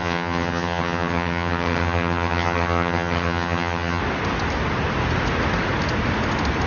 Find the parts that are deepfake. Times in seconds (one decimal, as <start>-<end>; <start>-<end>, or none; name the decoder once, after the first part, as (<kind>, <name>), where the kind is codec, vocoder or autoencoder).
0.0-4.0 (vocoder, HiFi-GAN)